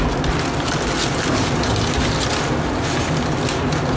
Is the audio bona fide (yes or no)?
yes